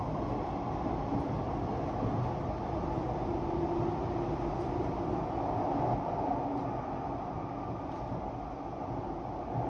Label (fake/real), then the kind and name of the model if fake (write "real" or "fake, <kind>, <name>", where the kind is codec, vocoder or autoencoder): real